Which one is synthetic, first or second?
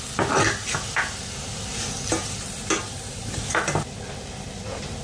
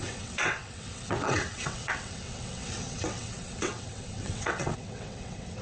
second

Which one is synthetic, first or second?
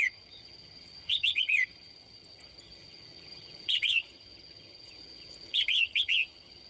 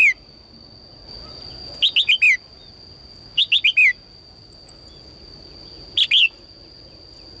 first